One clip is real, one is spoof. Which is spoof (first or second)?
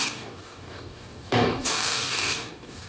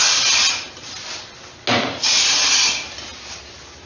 first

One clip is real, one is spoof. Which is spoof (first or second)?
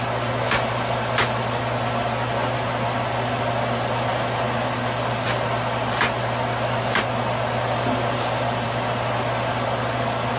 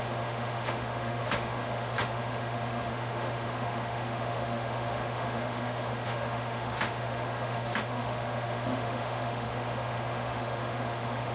second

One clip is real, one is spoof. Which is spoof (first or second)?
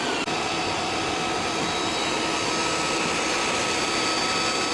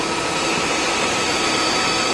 second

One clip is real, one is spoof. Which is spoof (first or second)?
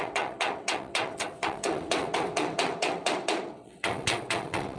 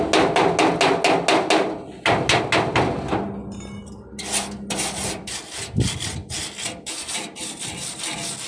first